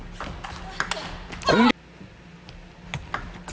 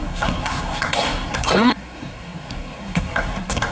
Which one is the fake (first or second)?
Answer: second